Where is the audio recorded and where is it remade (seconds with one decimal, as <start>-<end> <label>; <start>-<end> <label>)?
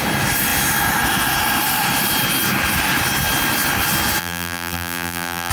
0.0-4.2 recorded; 4.2-5.5 remade